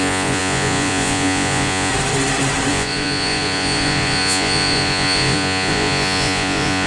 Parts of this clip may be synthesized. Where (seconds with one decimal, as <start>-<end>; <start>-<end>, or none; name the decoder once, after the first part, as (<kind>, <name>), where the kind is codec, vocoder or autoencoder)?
0.0-1.9 (vocoder, Vocos); 2.7-6.9